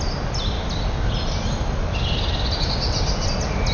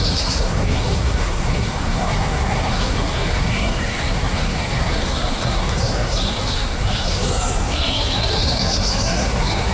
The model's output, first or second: second